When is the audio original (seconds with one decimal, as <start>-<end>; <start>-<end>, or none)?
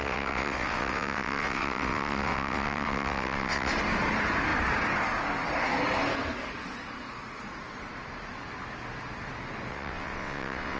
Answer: 3.7-9.7